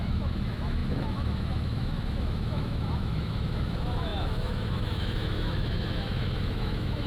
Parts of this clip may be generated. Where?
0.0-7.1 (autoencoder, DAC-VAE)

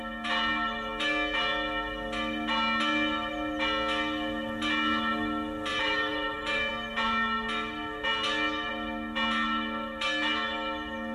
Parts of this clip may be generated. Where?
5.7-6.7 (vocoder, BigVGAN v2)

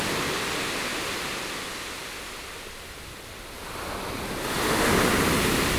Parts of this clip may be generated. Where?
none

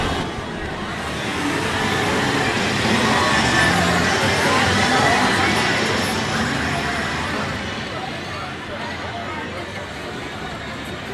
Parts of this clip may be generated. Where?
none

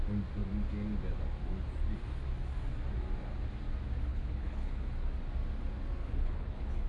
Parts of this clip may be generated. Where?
4.1-4.8 (codec, HILCodec); 6.0-6.9

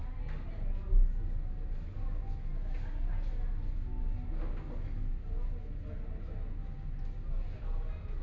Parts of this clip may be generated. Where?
none